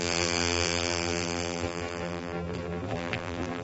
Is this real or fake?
fake